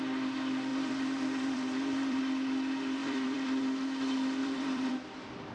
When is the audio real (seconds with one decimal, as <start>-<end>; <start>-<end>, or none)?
0.0-0.7; 2.2-3.0; 3.6-4.4; 4.9-5.5